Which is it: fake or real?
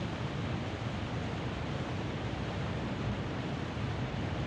real